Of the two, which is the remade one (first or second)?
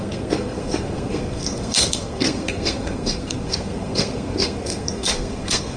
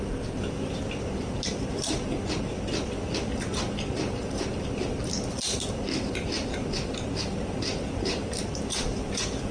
first